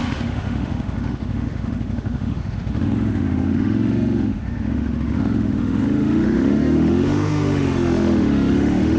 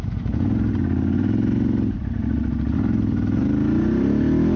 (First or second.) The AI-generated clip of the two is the first